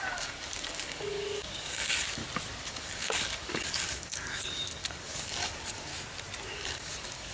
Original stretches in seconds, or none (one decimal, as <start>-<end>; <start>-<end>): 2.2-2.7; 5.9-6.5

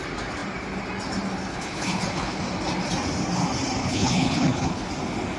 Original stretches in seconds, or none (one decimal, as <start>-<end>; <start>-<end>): 0.0-1.5; 2.4-3.8; 4.9-5.4

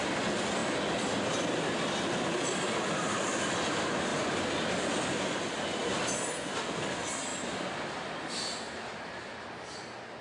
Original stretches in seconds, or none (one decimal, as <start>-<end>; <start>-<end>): 0.0-4.1; 6.1-10.2

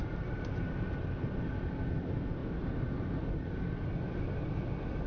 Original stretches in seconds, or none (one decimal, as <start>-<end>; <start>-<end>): 1.0-5.1